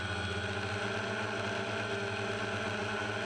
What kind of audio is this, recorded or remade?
recorded